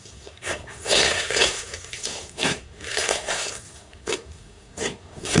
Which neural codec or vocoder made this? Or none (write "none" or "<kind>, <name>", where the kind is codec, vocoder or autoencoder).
codec, SNAC